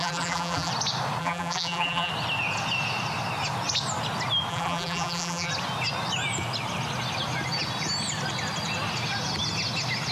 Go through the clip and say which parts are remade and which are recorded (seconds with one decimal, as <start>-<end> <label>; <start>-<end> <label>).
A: 0.0-0.7 remade; 0.7-1.2 recorded; 1.2-2.1 remade; 2.1-4.5 recorded; 4.5-5.5 remade; 5.5-10.1 recorded